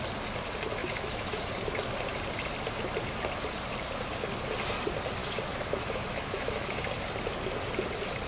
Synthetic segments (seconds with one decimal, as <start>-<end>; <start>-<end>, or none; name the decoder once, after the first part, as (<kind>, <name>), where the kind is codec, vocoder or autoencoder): 0.8-1.5 (autoencoder, DAC-VAE); 5.2-6.9